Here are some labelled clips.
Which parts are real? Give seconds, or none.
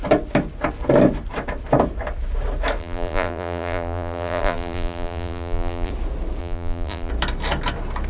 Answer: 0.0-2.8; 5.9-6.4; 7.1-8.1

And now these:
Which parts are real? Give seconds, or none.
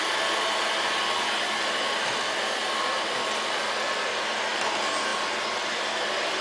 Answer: 0.0-6.4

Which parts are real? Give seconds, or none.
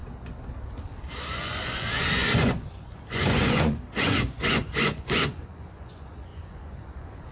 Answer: 0.0-1.1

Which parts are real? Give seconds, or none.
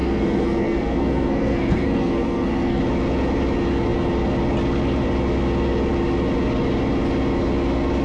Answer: 2.8-8.0